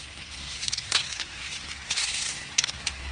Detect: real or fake fake